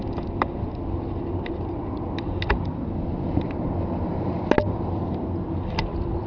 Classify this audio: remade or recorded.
recorded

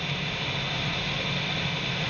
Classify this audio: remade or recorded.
recorded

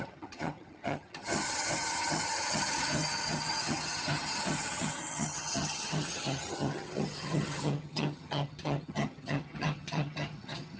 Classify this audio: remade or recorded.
remade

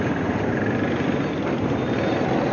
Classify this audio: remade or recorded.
recorded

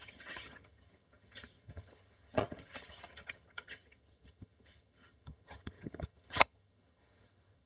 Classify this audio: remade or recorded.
remade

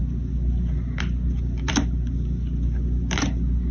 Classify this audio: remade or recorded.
recorded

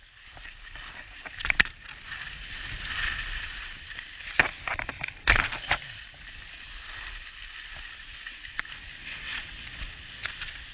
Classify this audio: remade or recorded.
recorded